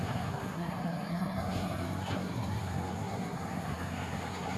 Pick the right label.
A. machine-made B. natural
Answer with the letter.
A